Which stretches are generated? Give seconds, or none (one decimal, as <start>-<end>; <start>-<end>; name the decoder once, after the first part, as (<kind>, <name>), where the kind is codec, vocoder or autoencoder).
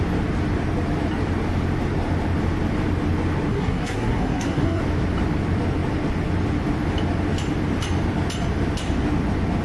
3.5-4.8 (codec, SNAC)